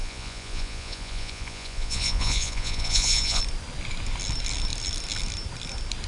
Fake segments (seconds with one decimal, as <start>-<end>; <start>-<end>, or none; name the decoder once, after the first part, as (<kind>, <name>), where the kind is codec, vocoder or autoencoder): 0.0-3.4 (vocoder, Vocos)